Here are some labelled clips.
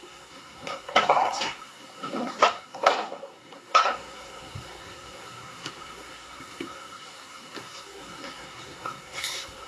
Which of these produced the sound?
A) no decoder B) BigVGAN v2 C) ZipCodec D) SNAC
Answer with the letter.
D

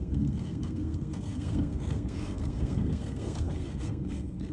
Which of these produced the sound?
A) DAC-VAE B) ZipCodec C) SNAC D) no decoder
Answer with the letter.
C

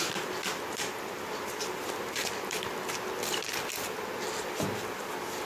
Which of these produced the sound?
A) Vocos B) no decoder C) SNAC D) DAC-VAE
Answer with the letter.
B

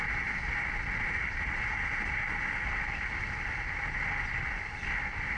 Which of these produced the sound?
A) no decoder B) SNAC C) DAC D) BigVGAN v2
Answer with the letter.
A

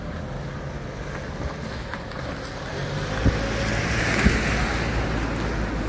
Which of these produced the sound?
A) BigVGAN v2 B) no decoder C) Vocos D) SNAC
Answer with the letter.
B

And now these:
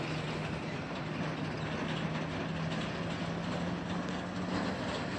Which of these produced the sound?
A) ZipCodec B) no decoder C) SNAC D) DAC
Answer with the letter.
B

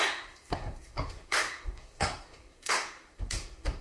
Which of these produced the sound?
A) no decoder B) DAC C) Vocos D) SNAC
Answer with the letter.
D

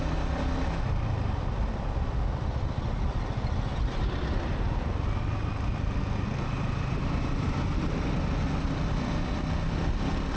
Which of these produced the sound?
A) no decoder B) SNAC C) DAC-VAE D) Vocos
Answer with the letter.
A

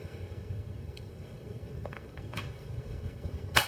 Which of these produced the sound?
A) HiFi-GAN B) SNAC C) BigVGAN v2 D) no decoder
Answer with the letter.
B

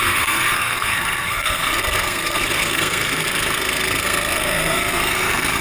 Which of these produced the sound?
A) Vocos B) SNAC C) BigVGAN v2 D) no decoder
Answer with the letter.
B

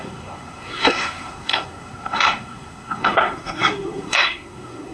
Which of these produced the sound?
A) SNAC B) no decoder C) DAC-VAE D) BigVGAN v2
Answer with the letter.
A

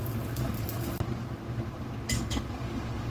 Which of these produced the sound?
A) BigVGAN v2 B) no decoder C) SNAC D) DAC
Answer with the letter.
B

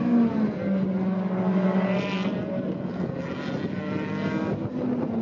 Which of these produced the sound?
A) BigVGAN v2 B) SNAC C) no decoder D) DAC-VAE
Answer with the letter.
C